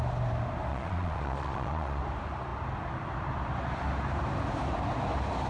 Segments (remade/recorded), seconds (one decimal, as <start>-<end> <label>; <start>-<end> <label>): 0.0-0.7 recorded; 0.7-2.0 remade; 2.0-5.5 recorded